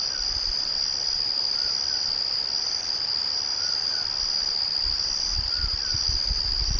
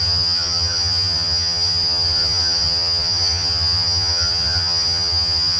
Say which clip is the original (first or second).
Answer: first